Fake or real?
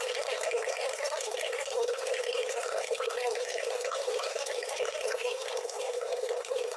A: fake